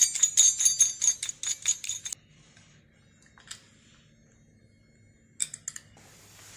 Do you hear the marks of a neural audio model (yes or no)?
no